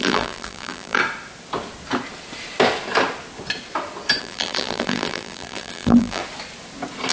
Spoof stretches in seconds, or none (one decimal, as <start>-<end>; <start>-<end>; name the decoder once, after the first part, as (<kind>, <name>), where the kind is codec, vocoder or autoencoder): 0.0-1.0 (vocoder, BigVGAN v2); 4.2-6.2